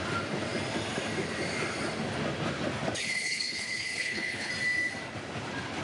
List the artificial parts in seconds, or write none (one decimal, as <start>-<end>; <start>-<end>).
3.0-4.5